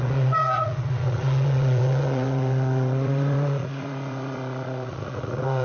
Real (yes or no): no